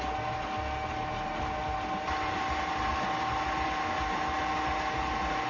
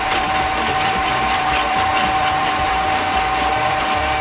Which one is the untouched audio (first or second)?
first